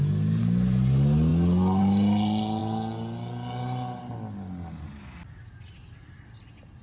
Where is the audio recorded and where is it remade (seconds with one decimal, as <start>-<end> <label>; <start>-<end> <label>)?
0.0-6.8 recorded